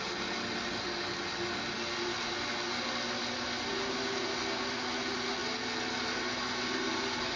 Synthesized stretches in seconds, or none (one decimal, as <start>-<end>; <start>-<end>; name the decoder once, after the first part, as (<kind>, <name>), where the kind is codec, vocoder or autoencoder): none